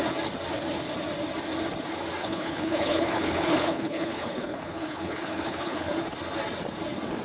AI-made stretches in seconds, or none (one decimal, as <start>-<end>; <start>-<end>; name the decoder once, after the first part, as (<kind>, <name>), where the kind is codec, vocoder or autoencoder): 2.2-5.9 (codec, HILCodec)